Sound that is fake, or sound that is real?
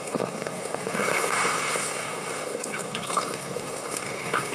fake